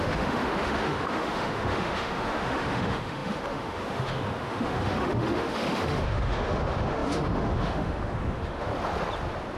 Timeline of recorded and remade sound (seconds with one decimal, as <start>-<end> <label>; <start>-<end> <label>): 0.0-8.7 remade; 8.7-9.6 recorded